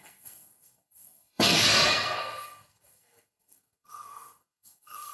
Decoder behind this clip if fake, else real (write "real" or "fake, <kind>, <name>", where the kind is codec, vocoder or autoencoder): fake, codec, SNAC